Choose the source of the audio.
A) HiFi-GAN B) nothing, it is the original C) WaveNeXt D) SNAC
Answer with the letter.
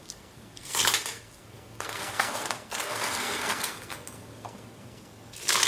D